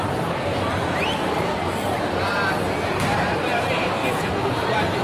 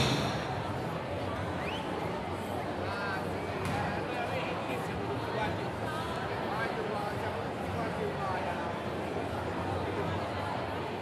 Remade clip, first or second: first